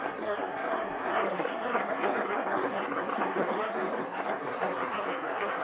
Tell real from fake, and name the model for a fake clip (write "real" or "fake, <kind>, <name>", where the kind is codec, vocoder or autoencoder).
fake, codec, SNAC